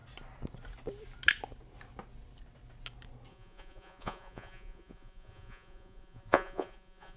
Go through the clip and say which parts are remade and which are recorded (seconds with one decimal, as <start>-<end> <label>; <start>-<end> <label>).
0.0-3.3 recorded; 3.3-7.2 remade